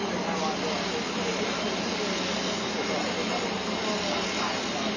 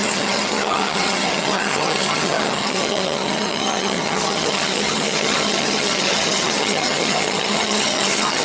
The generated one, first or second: second